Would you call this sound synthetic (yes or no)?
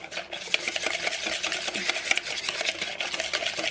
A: no